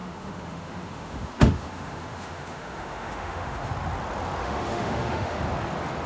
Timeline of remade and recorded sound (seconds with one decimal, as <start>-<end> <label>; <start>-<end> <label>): 0.0-3.7 remade; 3.7-4.4 recorded; 4.4-5.4 remade; 5.4-6.1 recorded